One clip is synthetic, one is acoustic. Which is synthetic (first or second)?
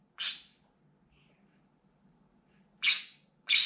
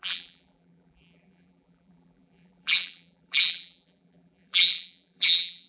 second